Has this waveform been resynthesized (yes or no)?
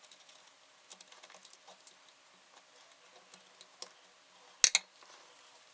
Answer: no